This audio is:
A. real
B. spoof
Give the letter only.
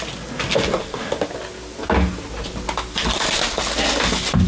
A